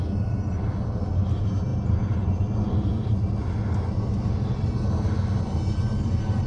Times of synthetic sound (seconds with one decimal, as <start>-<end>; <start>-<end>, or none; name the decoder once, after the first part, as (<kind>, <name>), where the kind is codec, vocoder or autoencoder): none